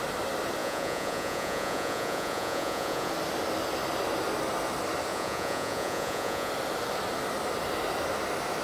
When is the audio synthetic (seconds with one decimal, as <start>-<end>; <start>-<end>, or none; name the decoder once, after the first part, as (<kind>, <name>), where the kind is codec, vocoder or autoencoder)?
0.6-3.1 (vocoder, Vocos); 5.1-6.5

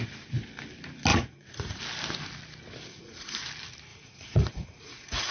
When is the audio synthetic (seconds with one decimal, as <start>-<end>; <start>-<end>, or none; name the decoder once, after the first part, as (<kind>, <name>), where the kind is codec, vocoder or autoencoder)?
1.1-1.8 (vocoder, Vocos); 2.9-3.4; 3.9-5.3

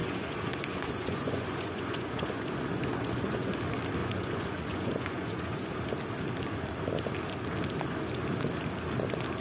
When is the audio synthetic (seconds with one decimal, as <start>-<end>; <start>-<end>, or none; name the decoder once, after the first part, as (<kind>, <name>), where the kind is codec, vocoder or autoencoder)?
0.0-3.6 (vocoder, Vocos); 4.0-5.7